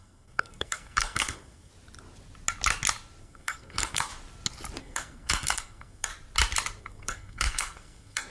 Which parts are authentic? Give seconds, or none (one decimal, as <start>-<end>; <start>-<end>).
1.7-3.2; 4.1-4.8; 6.1-6.8